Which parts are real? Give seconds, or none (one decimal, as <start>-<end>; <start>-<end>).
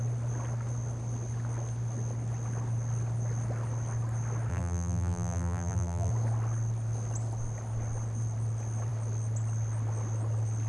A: 0.0-4.5; 6.1-10.7